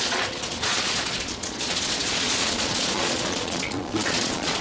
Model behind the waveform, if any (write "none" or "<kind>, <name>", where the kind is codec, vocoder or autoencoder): vocoder, Vocos